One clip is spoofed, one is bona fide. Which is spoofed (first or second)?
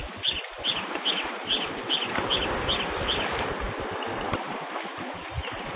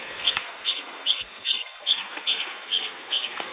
second